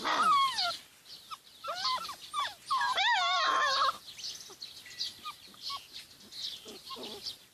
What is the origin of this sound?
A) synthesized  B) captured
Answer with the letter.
B